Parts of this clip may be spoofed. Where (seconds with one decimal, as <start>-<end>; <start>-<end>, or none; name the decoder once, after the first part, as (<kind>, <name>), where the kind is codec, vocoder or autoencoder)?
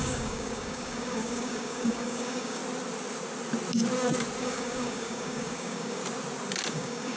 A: 0.0-2.6 (codec, DAC); 4.4-6.0; 6.7-7.2